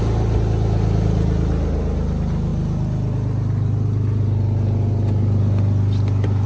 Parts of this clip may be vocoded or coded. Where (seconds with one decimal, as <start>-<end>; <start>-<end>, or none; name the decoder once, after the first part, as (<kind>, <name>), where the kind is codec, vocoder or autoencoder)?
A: none